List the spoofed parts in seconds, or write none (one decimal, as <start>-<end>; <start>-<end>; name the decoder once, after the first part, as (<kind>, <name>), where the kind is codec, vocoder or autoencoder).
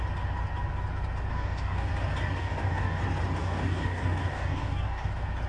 1.3-1.9 (codec, DAC); 2.4-3.0; 3.4-5.1